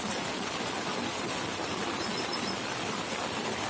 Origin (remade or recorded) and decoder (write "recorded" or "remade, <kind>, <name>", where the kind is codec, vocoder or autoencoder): recorded